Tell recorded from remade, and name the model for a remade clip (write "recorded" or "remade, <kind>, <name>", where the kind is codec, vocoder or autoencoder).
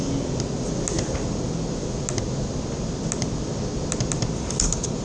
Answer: recorded